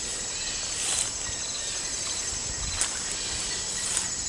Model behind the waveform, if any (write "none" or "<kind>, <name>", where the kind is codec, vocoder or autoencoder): none